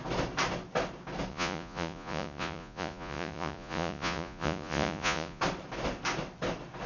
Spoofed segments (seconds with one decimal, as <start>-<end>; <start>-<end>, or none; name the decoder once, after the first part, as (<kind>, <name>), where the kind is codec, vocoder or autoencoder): 1.3-5.4 (vocoder, Vocos)